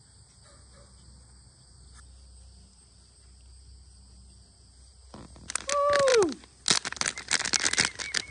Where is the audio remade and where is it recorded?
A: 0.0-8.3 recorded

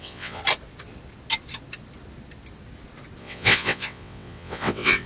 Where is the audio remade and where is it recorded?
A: 0.0-0.4 remade; 0.4-3.2 recorded; 3.2-5.1 remade

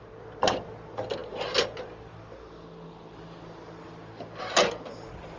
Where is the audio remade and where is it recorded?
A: 0.0-5.4 recorded